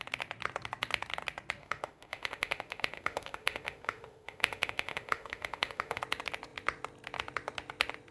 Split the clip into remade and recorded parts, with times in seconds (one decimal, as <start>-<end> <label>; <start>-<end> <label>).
0.0-1.6 recorded; 1.6-6.0 remade; 6.0-8.1 recorded